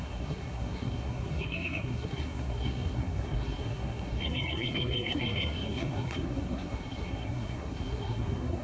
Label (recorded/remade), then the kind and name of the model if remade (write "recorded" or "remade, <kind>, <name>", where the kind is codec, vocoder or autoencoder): remade, codec, SNAC